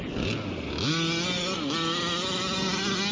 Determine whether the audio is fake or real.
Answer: real